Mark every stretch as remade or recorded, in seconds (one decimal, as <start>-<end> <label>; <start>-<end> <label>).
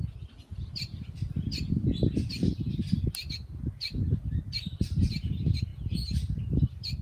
0.0-7.0 recorded